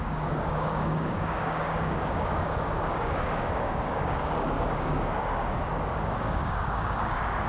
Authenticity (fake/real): fake